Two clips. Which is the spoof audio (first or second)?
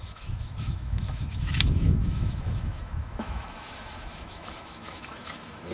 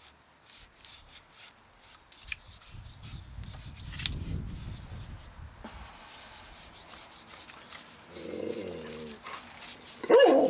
first